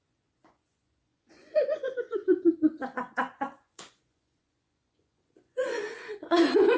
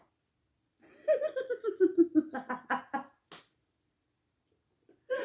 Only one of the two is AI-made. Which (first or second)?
first